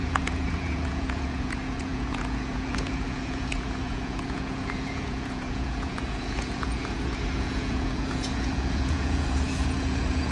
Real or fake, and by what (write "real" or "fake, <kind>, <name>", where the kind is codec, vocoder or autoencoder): fake, vocoder, Vocos